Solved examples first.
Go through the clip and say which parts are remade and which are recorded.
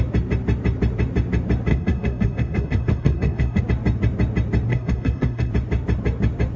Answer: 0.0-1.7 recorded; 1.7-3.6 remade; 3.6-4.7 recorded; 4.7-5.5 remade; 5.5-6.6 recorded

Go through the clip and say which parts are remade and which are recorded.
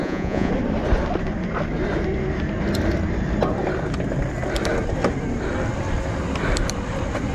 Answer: 0.0-0.5 remade; 0.5-7.3 recorded